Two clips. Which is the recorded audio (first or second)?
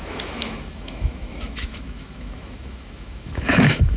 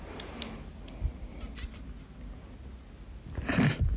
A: second